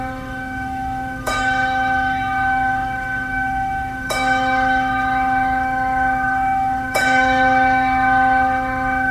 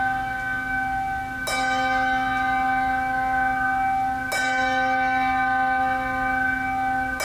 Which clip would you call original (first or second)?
second